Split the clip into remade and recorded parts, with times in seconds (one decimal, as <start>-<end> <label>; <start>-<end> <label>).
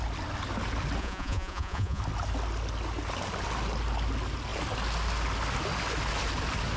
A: 0.0-1.0 recorded; 1.0-2.0 remade; 2.0-6.8 recorded